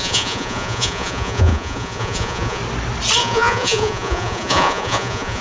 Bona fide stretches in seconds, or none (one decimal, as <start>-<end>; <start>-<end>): 2.6-3.2